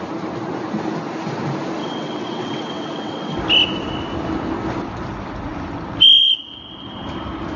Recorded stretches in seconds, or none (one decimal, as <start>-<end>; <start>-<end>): 0.0-1.8; 3.4-7.6